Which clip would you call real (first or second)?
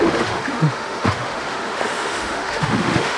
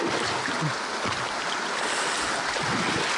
second